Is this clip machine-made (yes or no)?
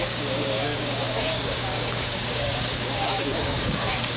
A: yes